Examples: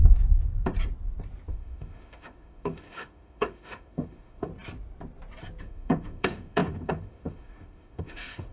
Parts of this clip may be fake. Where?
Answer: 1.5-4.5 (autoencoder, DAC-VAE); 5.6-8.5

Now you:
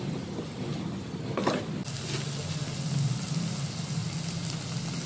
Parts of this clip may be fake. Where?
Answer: none

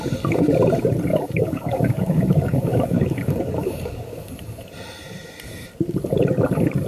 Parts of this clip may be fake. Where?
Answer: 1.1-4.3 (codec, DAC)

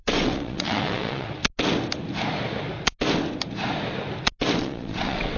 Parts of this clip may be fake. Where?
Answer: 0.0-1.4 (vocoder, WaveNeXt); 4.6-5.4

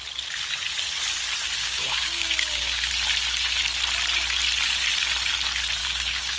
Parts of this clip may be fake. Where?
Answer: 1.6-2.9 (codec, DAC); 5.8-6.4

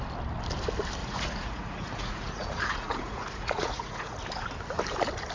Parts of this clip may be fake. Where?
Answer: 1.0-4.2 (vocoder, Vocos)